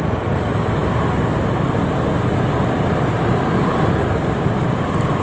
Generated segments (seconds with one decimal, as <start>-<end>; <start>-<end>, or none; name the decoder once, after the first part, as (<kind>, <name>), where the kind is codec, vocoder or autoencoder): none